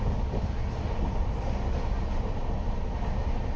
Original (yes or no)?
yes